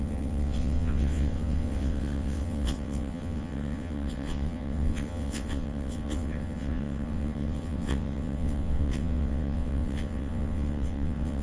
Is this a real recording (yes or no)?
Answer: no